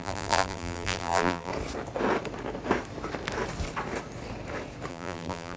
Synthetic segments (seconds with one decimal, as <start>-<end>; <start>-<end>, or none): 0.0-1.5; 4.9-5.6